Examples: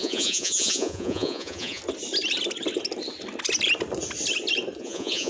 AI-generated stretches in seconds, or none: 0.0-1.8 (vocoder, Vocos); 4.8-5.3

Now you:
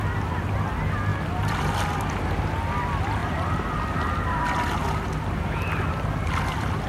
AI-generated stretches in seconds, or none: none

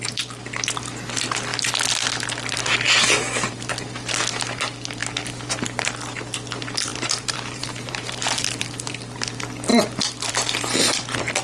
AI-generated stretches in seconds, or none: 6.9-8.6 (vocoder, BigVGAN v2); 9.7-10.3

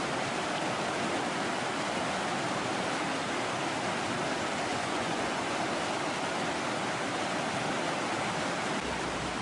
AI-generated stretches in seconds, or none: 4.7-5.6 (vocoder, Vocos)

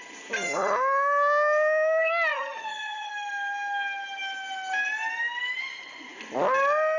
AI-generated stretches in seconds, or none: 2.3-3.1 (vocoder, Vocos)

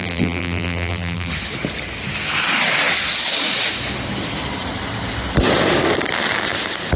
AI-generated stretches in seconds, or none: 0.0-1.3 (vocoder, BigVGAN v2)

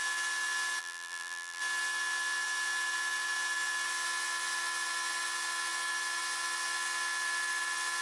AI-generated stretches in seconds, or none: 0.8-1.6 (vocoder, BigVGAN v2)